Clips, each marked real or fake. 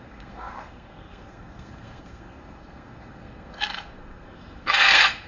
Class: fake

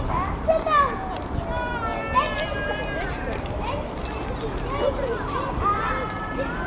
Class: real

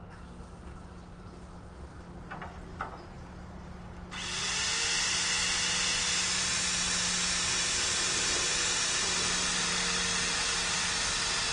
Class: real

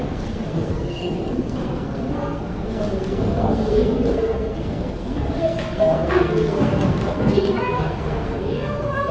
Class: fake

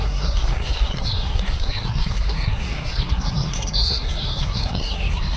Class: fake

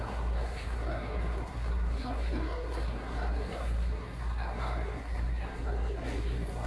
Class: fake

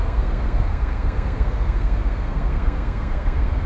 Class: fake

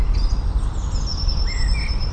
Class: real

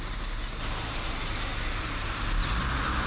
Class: real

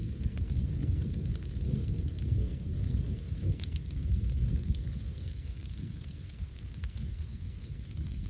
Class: fake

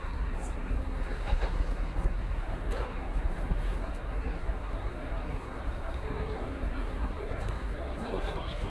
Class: fake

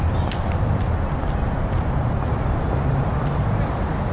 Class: real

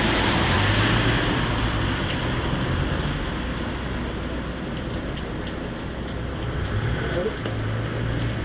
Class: real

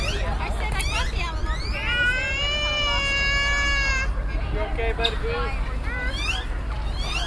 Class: real